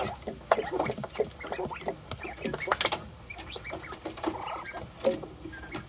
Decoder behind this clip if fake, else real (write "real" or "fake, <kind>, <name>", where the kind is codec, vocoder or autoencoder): real